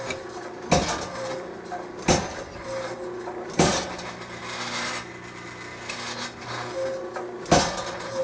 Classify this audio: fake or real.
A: real